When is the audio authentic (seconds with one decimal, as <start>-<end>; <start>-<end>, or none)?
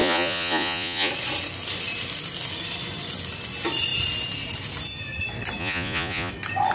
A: 1.1-5.6; 6.3-6.7